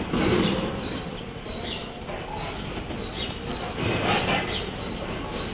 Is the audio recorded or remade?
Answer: remade